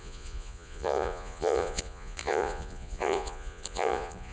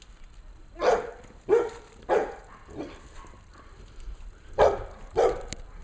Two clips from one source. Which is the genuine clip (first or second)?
second